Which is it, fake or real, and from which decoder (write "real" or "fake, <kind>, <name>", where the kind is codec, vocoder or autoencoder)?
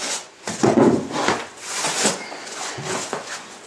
fake, vocoder, Vocos